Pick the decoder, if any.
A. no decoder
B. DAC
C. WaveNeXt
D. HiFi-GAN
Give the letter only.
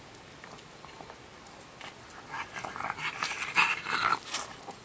A